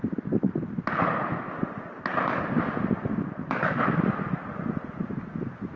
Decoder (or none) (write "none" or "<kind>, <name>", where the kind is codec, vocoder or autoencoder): none